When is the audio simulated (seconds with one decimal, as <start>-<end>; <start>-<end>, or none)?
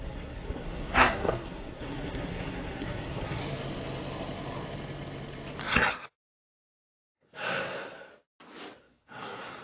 0.0-3.4; 6.1-8.1; 8.8-9.6